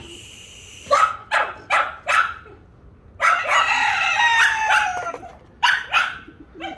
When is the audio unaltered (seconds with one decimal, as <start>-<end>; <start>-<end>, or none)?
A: 0.0-5.3; 6.0-6.8